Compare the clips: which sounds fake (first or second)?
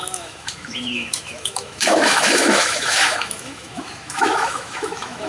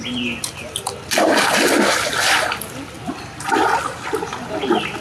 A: first